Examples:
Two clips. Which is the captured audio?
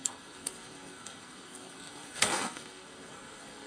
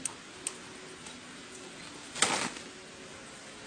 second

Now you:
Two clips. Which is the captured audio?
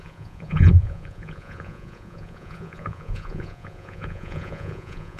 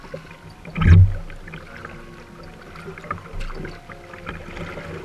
second